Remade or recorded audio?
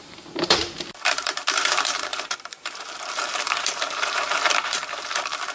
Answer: remade